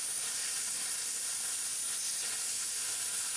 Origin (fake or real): real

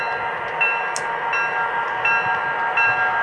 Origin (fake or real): real